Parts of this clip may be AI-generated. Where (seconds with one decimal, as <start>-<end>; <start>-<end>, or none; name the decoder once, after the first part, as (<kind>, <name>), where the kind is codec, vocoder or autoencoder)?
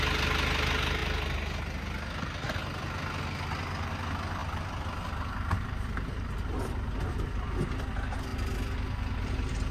none